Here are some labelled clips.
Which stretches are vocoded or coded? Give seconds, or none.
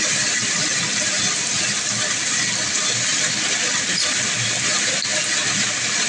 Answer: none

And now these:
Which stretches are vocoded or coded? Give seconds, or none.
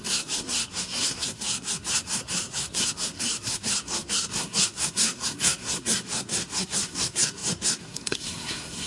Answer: 0.0-8.9 (codec, SNAC)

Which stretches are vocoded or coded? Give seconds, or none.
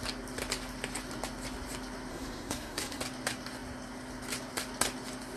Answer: 2.1-3.0 (codec, SNAC)